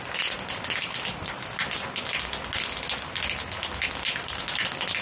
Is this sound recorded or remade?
recorded